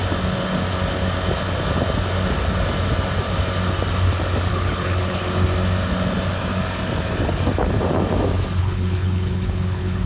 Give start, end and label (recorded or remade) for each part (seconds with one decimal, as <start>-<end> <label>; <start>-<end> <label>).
0.0-4.5 recorded; 4.5-5.2 remade; 5.2-8.6 recorded; 8.6-10.1 remade